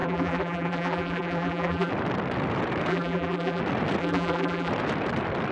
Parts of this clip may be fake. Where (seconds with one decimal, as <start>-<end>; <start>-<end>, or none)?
0.0-1.9; 2.9-3.6; 4.0-4.7